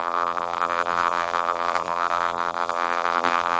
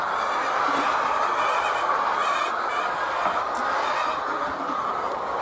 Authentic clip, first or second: second